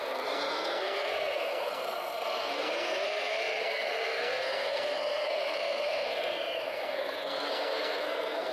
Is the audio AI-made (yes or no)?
yes